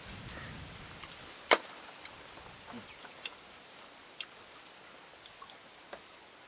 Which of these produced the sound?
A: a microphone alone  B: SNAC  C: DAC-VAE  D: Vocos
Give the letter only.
A